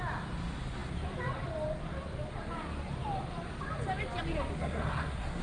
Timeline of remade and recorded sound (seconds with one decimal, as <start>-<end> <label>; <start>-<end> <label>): 0.0-4.5 recorded; 4.5-5.4 remade